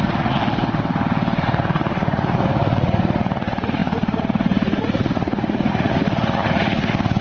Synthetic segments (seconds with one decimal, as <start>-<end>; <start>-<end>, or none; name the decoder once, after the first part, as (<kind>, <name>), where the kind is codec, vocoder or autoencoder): 0.0-0.4 (vocoder, Vocos); 1.4-7.2